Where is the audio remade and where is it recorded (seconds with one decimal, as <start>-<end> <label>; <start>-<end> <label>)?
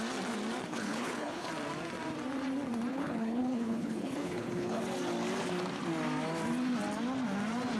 0.0-0.7 recorded; 0.7-1.5 remade; 1.5-2.9 recorded; 2.9-4.8 remade; 4.8-7.8 recorded